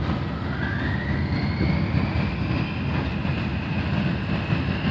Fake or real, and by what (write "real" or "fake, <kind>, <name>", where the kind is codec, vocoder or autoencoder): real